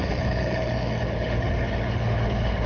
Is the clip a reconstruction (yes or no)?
yes